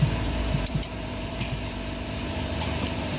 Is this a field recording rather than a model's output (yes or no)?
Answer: no